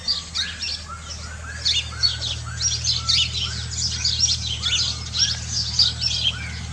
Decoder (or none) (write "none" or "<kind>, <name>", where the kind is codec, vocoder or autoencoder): none